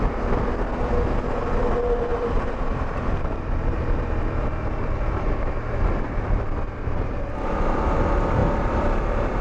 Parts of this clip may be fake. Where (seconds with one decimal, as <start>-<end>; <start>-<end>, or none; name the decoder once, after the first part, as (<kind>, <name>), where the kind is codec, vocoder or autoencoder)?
2.1-6.2 (vocoder, BigVGAN v2); 8.4-9.4

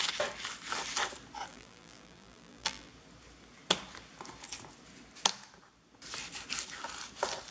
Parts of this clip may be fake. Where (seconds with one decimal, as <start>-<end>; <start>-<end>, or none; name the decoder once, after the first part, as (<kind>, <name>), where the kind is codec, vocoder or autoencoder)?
1.5-2.9 (vocoder, BigVGAN v2)

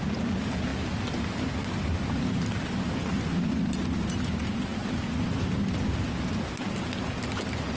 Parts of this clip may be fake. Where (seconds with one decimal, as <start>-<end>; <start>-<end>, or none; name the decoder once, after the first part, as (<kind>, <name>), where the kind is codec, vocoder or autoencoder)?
none